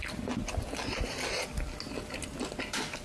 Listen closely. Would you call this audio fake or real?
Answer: real